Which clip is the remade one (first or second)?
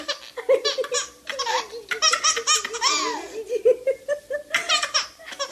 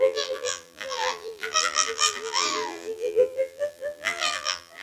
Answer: second